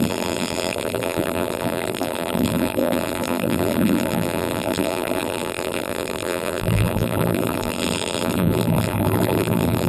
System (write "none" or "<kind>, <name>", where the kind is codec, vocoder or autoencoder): vocoder, BigVGAN v2